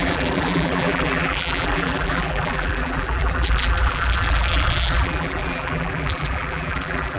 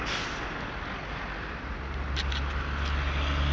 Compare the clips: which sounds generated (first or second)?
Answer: first